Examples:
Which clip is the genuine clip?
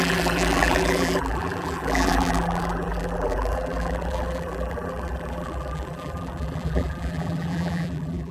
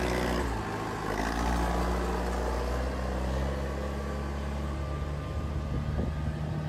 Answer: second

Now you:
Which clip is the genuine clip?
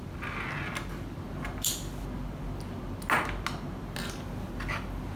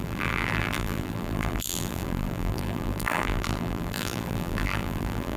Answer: first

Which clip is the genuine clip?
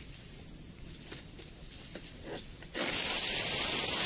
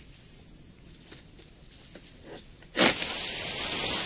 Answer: second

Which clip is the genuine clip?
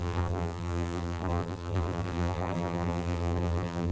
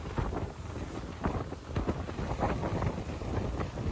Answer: second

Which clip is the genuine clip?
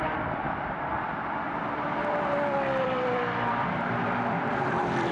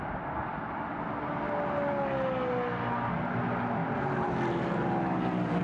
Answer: second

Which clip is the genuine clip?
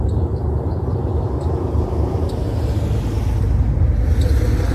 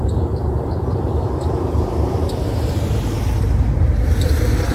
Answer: first